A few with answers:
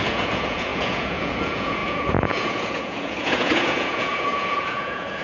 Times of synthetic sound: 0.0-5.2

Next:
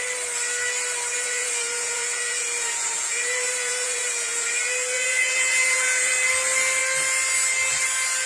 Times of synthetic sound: 1.1-6.1

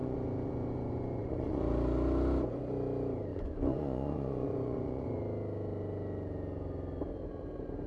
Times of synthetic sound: 0.0-1.6; 3.3-5.2

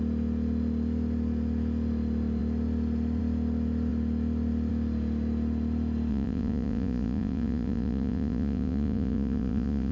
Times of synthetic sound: 6.1-9.9